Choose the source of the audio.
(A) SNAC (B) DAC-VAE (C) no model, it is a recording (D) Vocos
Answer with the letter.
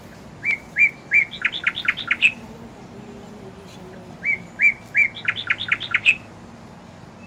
C